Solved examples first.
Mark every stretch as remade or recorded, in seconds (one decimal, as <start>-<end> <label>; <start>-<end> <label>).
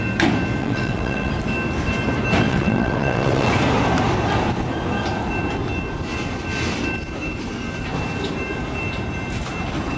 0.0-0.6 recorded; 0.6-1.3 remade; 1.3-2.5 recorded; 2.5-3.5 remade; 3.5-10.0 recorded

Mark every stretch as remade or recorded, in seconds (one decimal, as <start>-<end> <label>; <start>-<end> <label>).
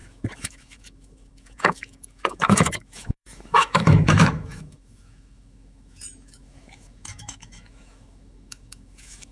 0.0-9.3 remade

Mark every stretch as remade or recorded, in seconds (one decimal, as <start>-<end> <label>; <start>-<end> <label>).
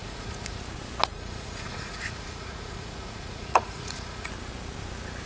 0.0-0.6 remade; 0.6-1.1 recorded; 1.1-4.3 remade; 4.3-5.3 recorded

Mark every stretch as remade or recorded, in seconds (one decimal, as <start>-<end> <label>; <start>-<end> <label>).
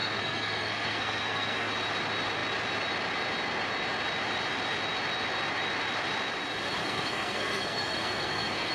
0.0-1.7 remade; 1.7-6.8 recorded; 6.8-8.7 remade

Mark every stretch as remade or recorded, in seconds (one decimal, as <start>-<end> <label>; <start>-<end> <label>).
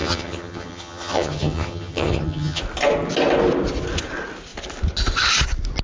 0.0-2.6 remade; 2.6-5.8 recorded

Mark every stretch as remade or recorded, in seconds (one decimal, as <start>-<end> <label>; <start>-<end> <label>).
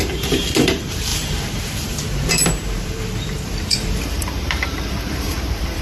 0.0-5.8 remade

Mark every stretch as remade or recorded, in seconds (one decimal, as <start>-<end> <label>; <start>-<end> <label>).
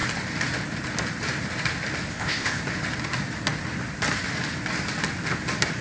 0.0-2.1 recorded; 2.1-2.6 remade; 2.6-5.8 recorded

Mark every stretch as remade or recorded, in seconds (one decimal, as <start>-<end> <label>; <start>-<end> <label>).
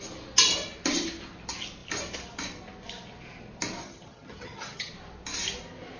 0.0-3.8 recorded; 3.8-4.9 remade; 4.9-6.0 recorded